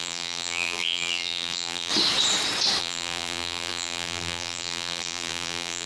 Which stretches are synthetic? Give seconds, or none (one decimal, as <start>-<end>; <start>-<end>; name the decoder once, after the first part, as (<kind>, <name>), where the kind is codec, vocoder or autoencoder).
0.0-1.9 (vocoder, BigVGAN v2); 2.8-5.9